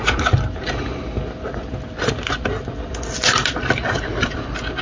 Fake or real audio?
real